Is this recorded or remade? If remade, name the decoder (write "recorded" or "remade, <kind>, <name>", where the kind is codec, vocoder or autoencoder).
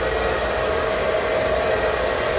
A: recorded